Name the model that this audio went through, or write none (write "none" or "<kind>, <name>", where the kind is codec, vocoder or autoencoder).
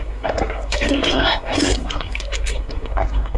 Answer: codec, SNAC